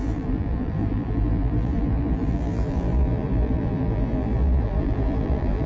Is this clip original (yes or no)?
no